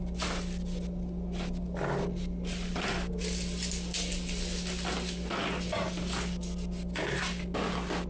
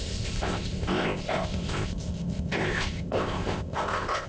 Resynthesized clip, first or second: second